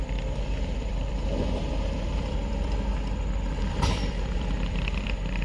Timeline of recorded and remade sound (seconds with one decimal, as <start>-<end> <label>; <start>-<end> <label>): 0.0-2.9 remade; 2.9-3.6 recorded; 3.6-5.4 remade